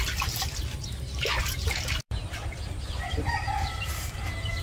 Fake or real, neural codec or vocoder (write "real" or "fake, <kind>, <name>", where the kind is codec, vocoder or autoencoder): fake, vocoder, BigVGAN v2